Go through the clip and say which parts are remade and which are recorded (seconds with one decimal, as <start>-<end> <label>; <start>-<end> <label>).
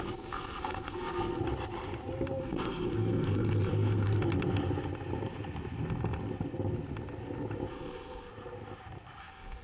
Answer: 0.0-1.4 remade; 1.4-2.4 recorded; 2.4-4.2 remade; 4.2-7.7 recorded; 7.7-8.3 remade; 8.3-9.2 recorded; 9.2-9.6 remade